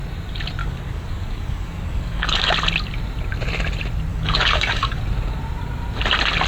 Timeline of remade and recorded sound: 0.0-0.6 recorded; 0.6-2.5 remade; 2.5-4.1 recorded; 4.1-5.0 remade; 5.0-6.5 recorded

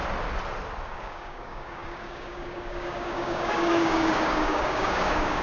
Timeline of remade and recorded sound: 0.0-0.9 recorded; 0.9-5.4 remade

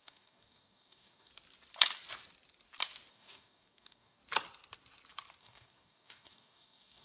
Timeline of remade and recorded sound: 0.0-1.3 remade; 1.3-3.1 recorded; 3.1-4.2 remade; 4.2-5.4 recorded; 5.4-7.0 remade